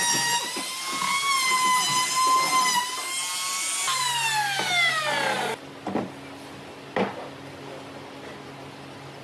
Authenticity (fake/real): real